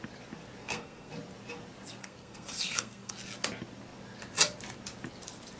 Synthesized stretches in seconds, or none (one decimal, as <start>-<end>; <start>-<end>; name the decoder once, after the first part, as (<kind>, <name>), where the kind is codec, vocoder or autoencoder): 0.6-1.1 (codec, SNAC); 2.0-3.1